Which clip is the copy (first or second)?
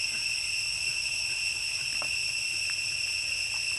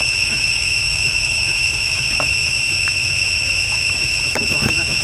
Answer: second